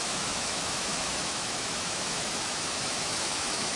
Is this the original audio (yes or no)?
no